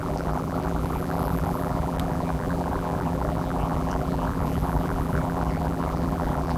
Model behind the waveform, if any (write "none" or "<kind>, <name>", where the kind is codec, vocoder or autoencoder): vocoder, BigVGAN v2